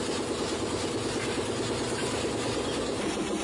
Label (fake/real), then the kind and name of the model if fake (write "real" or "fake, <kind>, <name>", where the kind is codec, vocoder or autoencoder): real